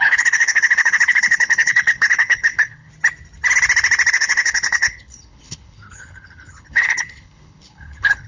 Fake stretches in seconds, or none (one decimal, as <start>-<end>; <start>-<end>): 0.0-2.9; 4.1-8.3

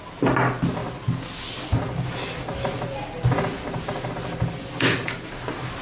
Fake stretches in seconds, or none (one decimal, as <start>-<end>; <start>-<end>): none

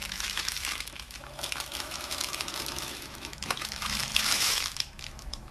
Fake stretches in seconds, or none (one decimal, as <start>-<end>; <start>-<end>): 0.0-5.5